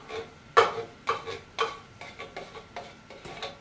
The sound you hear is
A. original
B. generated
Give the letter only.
A